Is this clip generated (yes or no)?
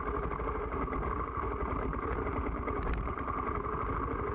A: no